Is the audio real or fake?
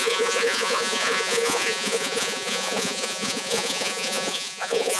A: fake